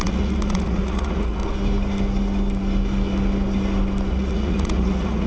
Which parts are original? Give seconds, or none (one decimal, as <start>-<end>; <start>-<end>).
1.4-4.1